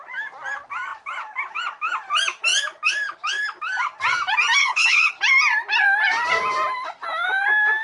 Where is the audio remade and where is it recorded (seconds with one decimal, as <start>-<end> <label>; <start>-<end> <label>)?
0.0-4.6 recorded; 4.6-5.1 remade; 5.1-7.8 recorded